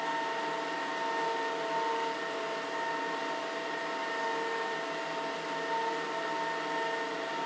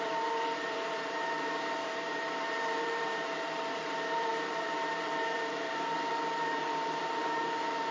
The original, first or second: first